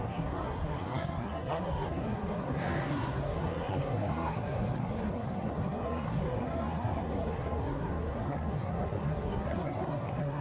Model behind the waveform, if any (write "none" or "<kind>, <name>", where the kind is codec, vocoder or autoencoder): codec, SNAC